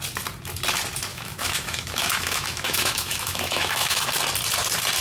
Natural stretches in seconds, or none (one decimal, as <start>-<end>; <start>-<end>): 0.0-1.1; 4.1-5.0